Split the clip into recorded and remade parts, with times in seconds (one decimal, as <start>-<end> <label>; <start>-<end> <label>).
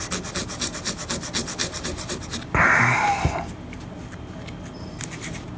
0.0-5.6 recorded